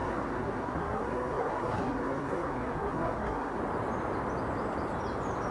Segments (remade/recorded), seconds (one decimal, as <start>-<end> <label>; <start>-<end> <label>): 0.0-3.6 remade; 3.6-5.5 recorded